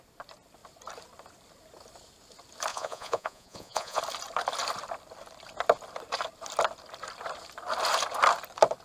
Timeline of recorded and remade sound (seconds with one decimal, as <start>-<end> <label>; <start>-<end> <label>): 0.0-2.7 recorded; 2.7-4.0 remade; 4.0-8.8 recorded